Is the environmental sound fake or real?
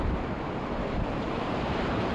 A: fake